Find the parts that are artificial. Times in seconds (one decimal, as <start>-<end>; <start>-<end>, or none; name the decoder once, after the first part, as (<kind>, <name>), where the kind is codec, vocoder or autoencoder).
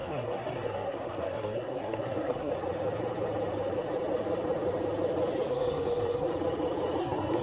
0.0-2.5 (codec, SNAC); 5.5-6.3; 7.0-7.4